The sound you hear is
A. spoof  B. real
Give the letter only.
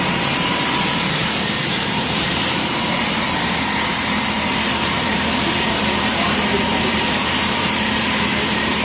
A